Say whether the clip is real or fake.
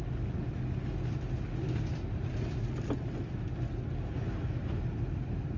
real